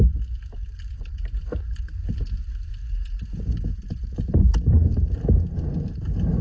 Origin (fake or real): real